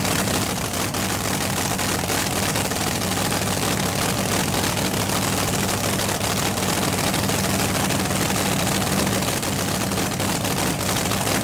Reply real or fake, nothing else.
real